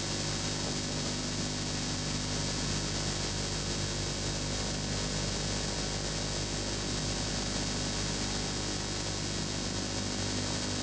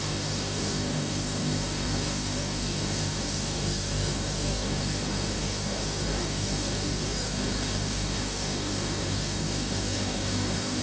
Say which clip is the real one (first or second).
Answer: first